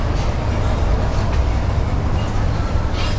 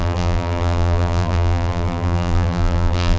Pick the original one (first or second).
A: first